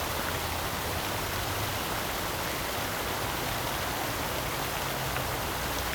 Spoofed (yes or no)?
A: no